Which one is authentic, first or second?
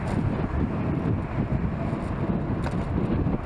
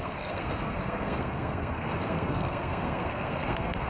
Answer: first